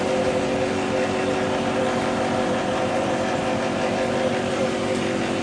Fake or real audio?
real